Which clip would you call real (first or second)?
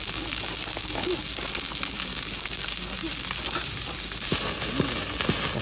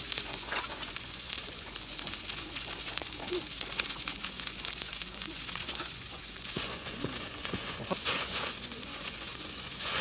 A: first